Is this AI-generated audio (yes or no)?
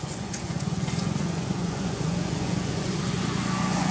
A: yes